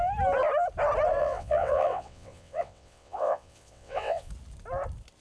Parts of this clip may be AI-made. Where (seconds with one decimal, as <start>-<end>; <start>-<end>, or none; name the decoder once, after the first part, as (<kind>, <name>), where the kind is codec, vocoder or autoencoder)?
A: 1.2-4.3 (vocoder, WaveNeXt)